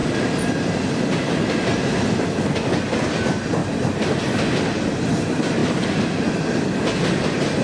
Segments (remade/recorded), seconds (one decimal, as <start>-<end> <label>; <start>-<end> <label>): 0.0-7.6 recorded